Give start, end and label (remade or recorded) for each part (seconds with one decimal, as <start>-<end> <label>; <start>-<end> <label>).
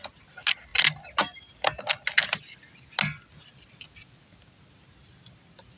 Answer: 0.0-5.8 recorded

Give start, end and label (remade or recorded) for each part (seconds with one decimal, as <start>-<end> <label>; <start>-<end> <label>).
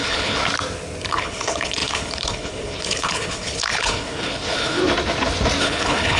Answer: 0.0-0.4 remade; 0.4-1.1 recorded; 1.1-4.8 remade; 4.8-5.6 recorded; 5.6-6.2 remade